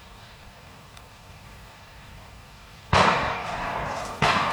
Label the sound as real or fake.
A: fake